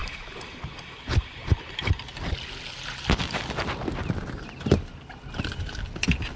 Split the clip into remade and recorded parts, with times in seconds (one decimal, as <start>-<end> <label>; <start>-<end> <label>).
0.0-6.4 recorded

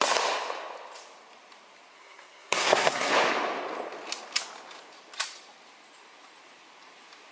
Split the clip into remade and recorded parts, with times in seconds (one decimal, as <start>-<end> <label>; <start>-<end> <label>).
0.0-1.9 recorded; 1.9-3.1 remade; 3.1-7.3 recorded

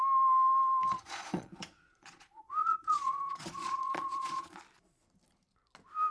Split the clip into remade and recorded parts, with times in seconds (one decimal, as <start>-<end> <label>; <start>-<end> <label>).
0.0-0.9 recorded; 0.9-4.6 remade; 4.6-6.1 recorded

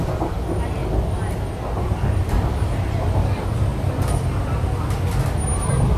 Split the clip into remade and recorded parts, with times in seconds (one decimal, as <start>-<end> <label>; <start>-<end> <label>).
0.0-6.0 recorded

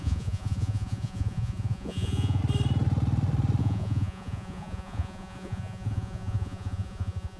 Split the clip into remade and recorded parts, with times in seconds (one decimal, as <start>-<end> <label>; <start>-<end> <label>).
0.0-2.4 remade; 2.4-3.6 recorded; 3.6-7.4 remade

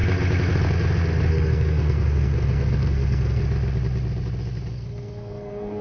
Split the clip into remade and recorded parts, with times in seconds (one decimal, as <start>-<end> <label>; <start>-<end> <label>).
0.0-1.3 recorded; 1.3-3.4 remade; 3.4-4.7 recorded; 4.7-5.8 remade

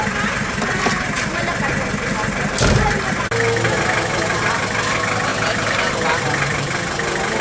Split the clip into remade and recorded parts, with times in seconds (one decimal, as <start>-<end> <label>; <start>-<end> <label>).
0.0-7.4 recorded